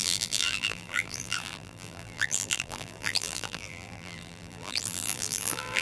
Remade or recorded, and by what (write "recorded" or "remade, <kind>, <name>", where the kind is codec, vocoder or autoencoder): remade, vocoder, BigVGAN v2